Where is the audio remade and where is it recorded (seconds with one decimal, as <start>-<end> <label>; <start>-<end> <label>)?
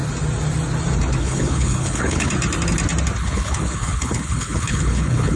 0.0-1.2 recorded; 1.2-2.3 remade; 2.3-3.2 recorded; 3.2-5.4 remade